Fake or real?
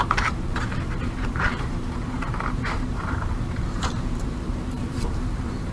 fake